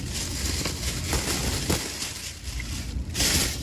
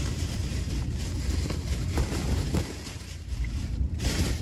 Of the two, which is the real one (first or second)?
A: first